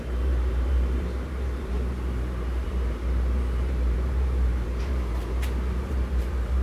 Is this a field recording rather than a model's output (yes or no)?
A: no